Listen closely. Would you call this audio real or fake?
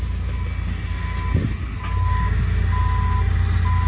real